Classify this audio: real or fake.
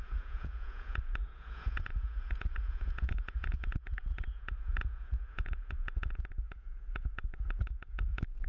fake